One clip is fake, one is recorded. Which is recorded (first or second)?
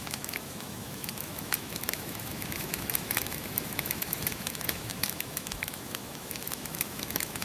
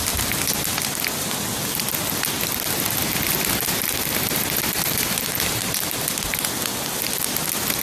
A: second